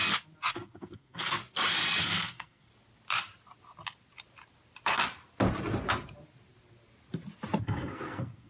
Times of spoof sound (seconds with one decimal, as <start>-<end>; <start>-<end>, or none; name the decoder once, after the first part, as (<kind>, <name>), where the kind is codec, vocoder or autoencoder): 0.5-1.4 (codec, SNAC); 2.0-2.7; 7.6-8.5